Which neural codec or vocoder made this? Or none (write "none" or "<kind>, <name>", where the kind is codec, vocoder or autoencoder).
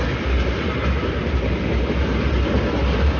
none